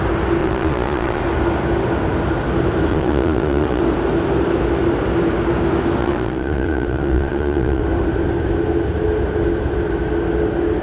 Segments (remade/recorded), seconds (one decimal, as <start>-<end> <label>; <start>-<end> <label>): 0.0-0.4 recorded; 0.4-1.2 remade; 1.2-2.9 recorded; 2.9-3.8 remade; 3.8-6.0 recorded; 6.0-7.8 remade; 7.8-10.8 recorded